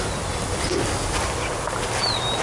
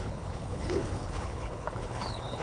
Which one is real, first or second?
first